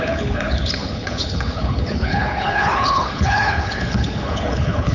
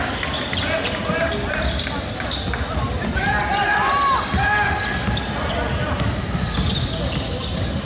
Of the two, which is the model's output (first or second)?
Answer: first